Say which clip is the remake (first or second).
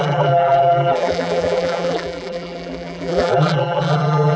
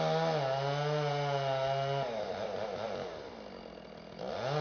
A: first